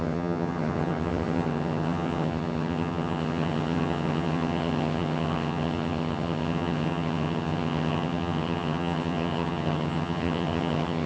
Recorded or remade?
remade